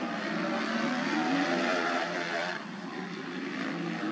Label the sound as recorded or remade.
recorded